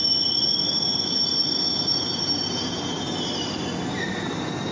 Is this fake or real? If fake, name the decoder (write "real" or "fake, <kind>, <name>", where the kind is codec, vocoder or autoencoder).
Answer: real